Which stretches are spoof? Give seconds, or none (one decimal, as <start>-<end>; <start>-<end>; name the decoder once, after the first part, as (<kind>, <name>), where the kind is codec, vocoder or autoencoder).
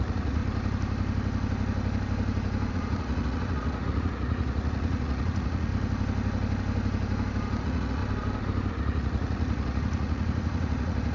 0.0-0.4 (vocoder, Vocos); 2.7-5.7; 7.6-8.0; 8.7-11.1